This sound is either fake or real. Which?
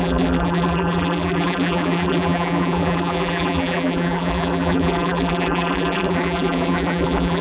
fake